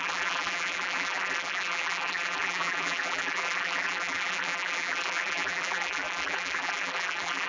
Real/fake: fake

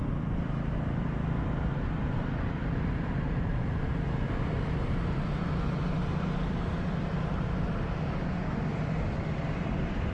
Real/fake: fake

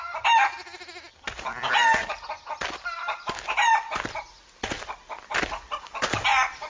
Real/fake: real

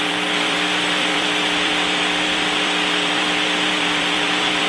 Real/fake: fake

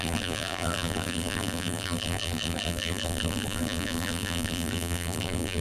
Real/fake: fake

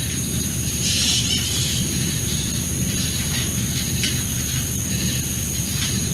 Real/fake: fake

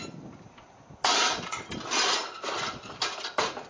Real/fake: real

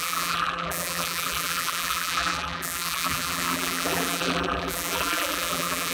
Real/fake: fake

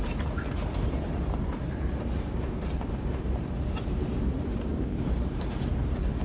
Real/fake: fake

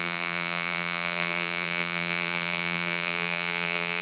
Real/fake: fake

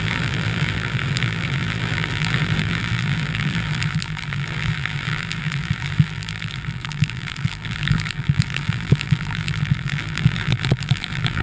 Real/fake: fake